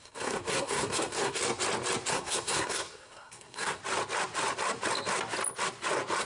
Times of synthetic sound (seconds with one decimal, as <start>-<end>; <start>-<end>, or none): 0.0-1.4; 2.1-3.8